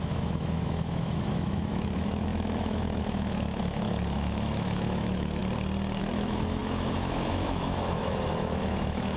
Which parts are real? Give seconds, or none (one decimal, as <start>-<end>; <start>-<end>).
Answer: 5.4-6.0